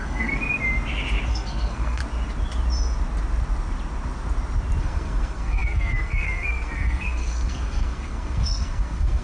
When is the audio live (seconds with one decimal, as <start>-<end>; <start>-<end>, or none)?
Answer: 0.4-1.3; 2.0-4.8

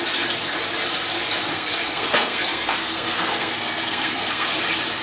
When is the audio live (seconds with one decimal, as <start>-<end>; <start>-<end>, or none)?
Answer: 0.0-1.5; 4.5-5.0

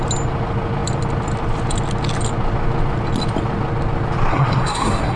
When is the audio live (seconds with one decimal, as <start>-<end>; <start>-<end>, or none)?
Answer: 0.0-4.3